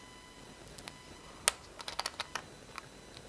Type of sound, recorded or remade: recorded